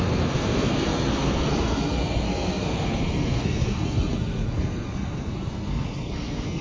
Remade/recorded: remade